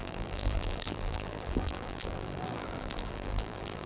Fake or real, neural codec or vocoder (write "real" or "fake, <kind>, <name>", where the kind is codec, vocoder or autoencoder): fake, vocoder, BigVGAN v2